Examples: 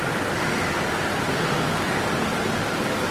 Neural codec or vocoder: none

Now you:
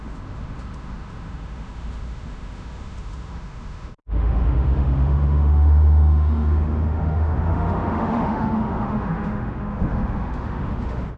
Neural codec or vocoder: autoencoder, DAC-VAE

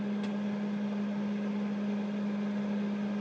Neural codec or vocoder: none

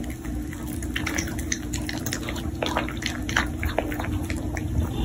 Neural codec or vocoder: none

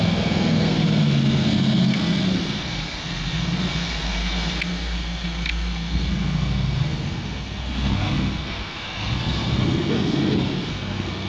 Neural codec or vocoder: codec, SNAC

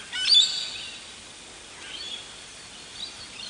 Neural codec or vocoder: none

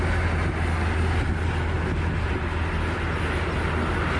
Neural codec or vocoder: none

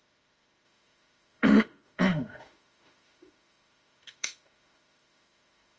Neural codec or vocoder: autoencoder, DAC-VAE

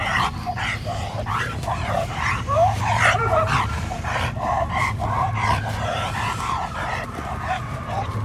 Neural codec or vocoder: vocoder, BigVGAN v2